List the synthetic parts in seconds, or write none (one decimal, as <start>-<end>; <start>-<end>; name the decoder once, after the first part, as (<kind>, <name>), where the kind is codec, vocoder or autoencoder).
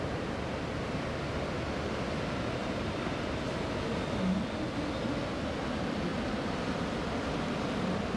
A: 2.6-3.8 (vocoder, BigVGAN v2); 6.1-6.9